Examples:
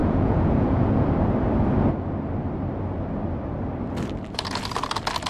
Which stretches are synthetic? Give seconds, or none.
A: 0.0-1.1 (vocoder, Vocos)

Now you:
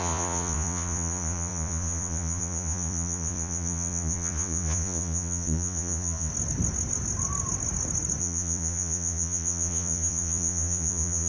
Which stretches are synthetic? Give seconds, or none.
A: 0.0-6.3 (vocoder, Vocos); 8.2-11.3

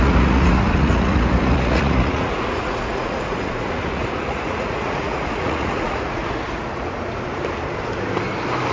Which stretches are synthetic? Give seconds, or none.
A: 0.0-6.2 (vocoder, Vocos)